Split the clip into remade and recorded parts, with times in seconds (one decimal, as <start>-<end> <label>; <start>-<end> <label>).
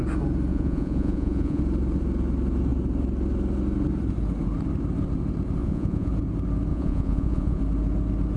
0.0-0.5 recorded; 0.5-1.6 remade; 1.6-5.6 recorded; 5.6-6.1 remade; 6.1-6.7 recorded; 6.7-7.6 remade; 7.6-8.4 recorded